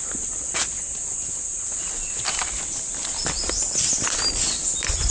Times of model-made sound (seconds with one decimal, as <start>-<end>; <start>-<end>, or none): 1.5-2.2